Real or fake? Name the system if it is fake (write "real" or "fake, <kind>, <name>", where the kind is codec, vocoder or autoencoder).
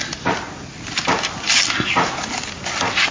real